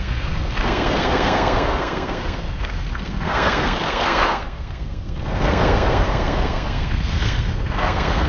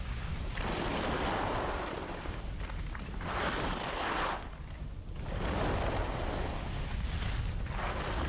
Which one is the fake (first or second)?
first